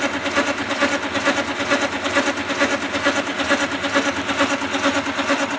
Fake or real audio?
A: real